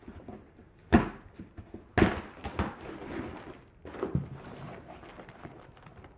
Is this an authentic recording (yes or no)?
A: yes